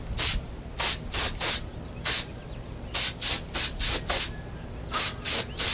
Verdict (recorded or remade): recorded